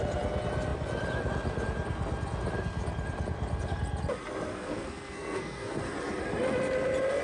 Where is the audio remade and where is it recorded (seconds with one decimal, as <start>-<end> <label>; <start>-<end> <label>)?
0.0-4.5 recorded; 4.5-5.8 remade; 5.8-7.2 recorded

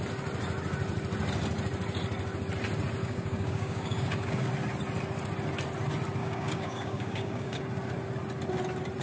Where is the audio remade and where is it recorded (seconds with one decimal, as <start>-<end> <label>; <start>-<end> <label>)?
0.0-3.0 recorded; 3.0-4.5 remade; 4.5-6.2 recorded; 6.2-7.6 remade; 7.6-9.0 recorded

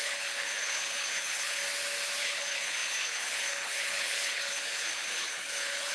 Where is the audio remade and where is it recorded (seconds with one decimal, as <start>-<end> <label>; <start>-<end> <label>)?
0.0-1.6 remade; 1.6-2.2 recorded; 2.2-5.9 remade

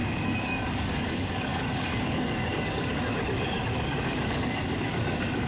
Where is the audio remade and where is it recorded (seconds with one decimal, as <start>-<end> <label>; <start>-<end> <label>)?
0.0-5.5 remade

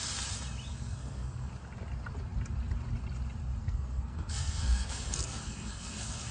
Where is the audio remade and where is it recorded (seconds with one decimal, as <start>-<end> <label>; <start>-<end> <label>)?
0.0-0.7 recorded; 0.7-1.5 remade; 1.5-3.6 recorded; 3.6-6.3 remade

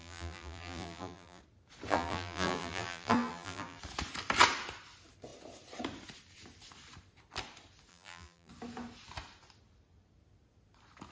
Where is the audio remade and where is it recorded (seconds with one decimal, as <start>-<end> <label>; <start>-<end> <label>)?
0.0-1.4 remade; 1.4-1.9 recorded; 1.9-3.8 remade; 3.8-7.9 recorded; 7.9-8.5 remade; 8.5-11.1 recorded

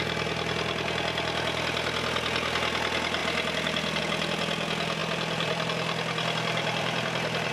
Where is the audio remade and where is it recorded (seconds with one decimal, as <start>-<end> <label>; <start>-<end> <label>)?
0.0-3.2 recorded; 3.2-4.0 remade; 4.0-5.0 recorded; 5.0-7.5 remade

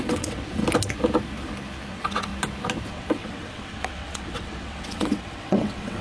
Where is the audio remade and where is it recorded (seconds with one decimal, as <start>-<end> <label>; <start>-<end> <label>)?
0.0-0.6 remade; 0.6-1.9 recorded; 1.9-2.3 remade; 2.3-2.9 recorded; 2.9-6.0 remade